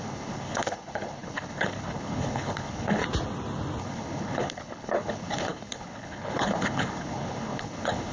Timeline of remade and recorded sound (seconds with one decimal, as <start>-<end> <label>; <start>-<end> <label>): 0.0-3.0 remade; 3.0-3.8 recorded; 3.8-8.1 remade